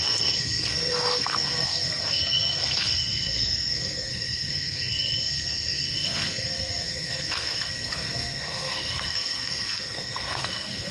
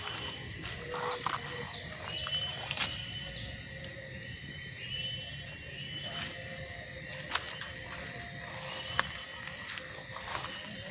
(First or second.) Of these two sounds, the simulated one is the first